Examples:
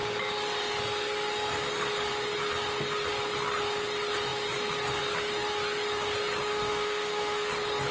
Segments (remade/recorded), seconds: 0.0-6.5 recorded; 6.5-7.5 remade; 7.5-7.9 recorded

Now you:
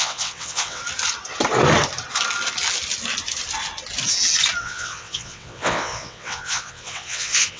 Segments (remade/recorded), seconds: 0.0-0.8 remade; 0.8-4.6 recorded; 4.6-7.6 remade

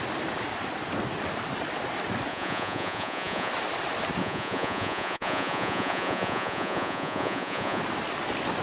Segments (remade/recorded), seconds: 0.0-2.3 recorded; 2.3-3.5 remade; 3.5-4.2 recorded; 4.2-7.8 remade; 7.8-8.6 recorded

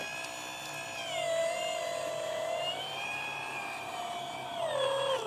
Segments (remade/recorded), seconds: 0.0-1.4 recorded; 1.4-4.6 remade; 4.6-5.3 recorded

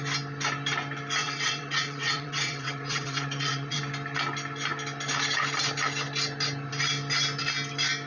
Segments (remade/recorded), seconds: 0.0-1.2 recorded; 1.2-3.8 remade; 3.8-8.1 recorded

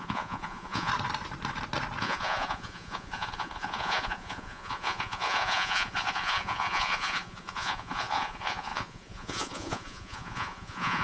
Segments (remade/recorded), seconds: 0.0-0.9 remade; 0.9-2.0 recorded; 2.0-11.0 remade

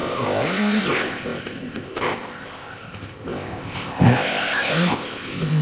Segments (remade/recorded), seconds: 0.0-5.6 remade